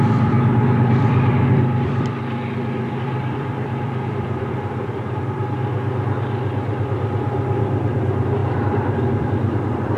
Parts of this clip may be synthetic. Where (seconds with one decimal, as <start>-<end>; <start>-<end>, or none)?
0.0-5.4; 7.6-10.0

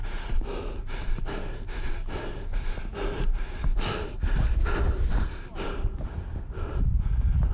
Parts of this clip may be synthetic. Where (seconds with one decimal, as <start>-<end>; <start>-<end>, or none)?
none

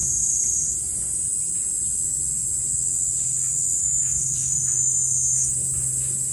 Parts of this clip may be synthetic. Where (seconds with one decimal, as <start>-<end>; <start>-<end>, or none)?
3.8-5.5

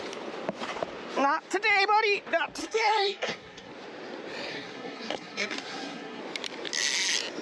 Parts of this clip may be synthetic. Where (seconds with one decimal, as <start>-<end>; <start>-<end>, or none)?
2.6-3.7; 4.5-6.2

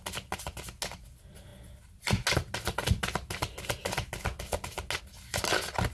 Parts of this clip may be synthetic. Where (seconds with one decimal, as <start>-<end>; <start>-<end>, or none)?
none

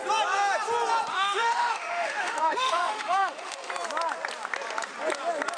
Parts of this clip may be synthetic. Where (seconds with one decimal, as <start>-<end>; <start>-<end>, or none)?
1.1-3.7

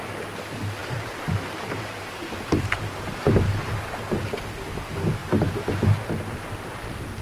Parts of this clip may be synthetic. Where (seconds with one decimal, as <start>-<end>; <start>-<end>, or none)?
0.8-3.7; 5.2-5.7

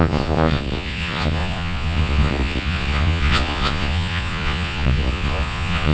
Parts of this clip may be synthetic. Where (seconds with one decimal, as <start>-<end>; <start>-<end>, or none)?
0.0-5.9